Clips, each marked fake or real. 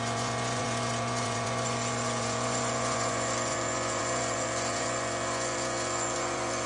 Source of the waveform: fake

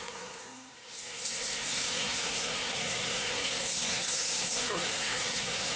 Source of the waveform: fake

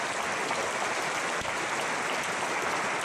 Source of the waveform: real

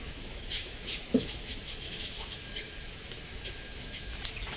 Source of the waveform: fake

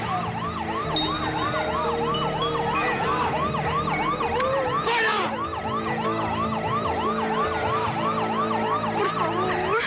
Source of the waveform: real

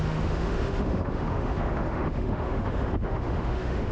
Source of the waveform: fake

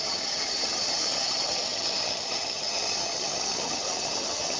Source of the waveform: fake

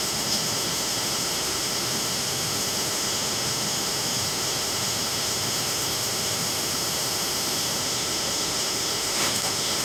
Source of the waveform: fake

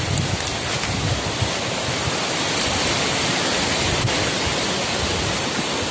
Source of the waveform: real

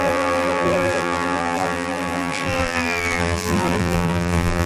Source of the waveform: fake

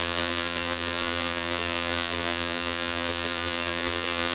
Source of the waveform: fake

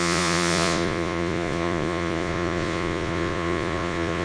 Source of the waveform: fake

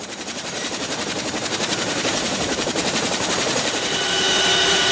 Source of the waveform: fake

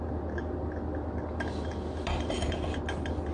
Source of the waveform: real